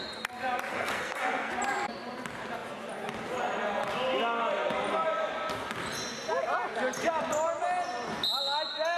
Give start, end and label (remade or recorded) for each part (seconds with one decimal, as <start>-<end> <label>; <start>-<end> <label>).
0.0-0.7 recorded; 0.7-1.5 remade; 1.5-9.0 recorded